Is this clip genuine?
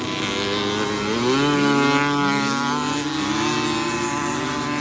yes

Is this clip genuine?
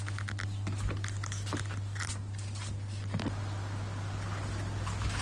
yes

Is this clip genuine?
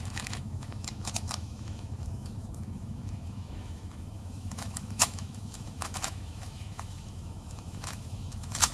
no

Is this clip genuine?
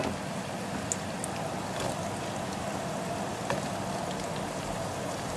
yes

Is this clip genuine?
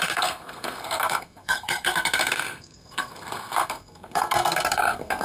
no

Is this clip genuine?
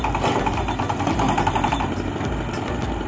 yes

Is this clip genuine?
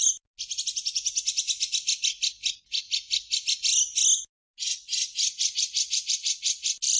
yes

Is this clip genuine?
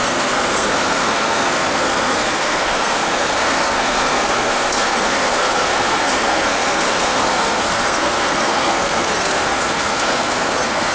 no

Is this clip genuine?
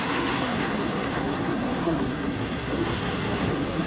no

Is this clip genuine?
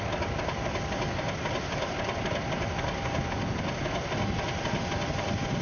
yes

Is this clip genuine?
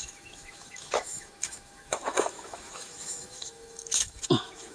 no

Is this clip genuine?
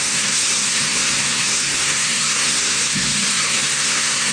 no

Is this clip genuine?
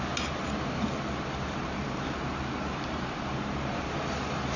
no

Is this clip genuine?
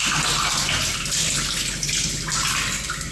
yes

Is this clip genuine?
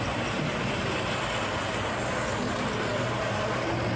yes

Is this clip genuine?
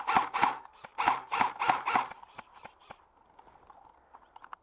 yes